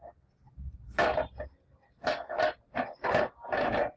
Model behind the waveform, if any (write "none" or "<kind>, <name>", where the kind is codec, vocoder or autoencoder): none